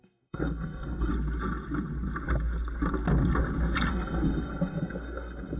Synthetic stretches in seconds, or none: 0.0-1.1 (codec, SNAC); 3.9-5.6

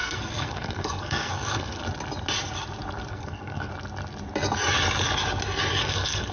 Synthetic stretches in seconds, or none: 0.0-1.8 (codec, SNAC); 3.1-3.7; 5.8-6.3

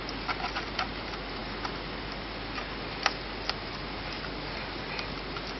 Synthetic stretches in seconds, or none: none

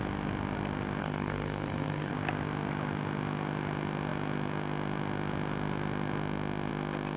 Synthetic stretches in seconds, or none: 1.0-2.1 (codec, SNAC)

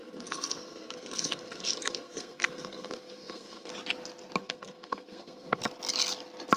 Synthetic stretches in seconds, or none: 0.0-3.7 (codec, SNAC); 4.4-5.6

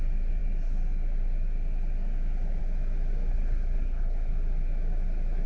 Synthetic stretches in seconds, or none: 3.3-4.3 (codec, SNAC)